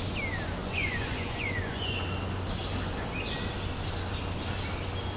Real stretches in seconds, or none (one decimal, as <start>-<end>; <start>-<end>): 0.0-0.6; 2.0-5.2